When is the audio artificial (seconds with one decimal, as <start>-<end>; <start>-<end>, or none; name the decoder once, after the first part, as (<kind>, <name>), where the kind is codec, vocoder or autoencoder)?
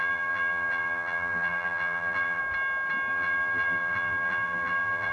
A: 0.0-2.4 (vocoder, BigVGAN v2); 3.1-5.1